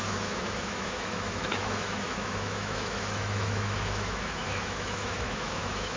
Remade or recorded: remade